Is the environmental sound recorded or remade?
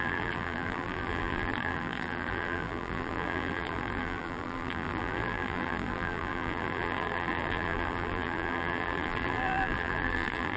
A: remade